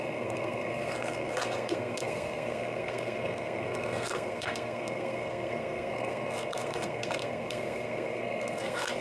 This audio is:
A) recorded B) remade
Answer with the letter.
B